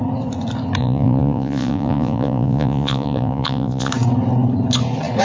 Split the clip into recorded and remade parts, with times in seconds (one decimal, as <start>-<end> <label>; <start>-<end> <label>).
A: 0.0-0.8 recorded; 0.8-3.9 remade; 3.9-5.2 recorded